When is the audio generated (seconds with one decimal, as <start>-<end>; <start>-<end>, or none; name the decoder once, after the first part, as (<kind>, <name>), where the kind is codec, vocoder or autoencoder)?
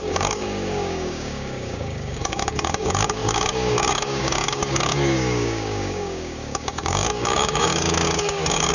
0.0-8.7 (codec, DAC)